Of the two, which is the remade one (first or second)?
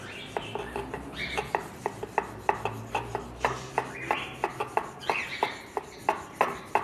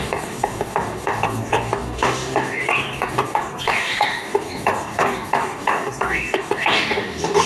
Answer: second